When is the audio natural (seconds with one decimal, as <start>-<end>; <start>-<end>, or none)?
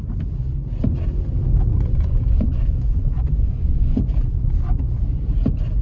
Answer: 0.0-1.7; 4.3-5.8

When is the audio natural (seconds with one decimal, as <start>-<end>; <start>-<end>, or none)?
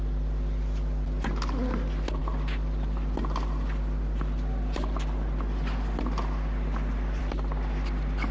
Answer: 0.0-8.3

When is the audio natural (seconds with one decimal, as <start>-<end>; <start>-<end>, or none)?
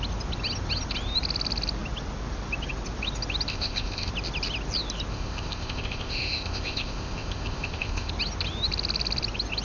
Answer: 0.0-3.5; 4.1-5.1; 8.1-9.6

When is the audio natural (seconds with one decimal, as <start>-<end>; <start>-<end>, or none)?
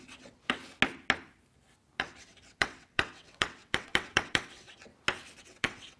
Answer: 0.6-2.0; 4.9-5.4